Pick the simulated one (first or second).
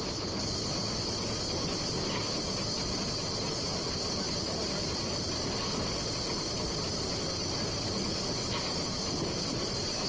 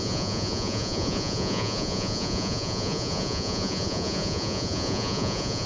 second